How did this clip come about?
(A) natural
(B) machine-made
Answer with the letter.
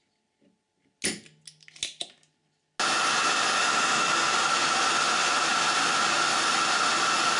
A